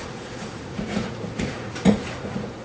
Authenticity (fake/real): fake